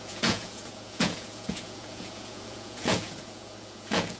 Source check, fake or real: fake